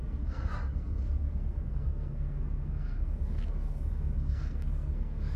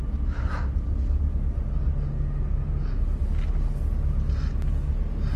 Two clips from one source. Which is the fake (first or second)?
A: first